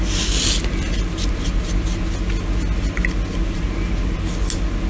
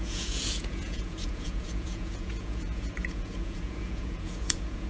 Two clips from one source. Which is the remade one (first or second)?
second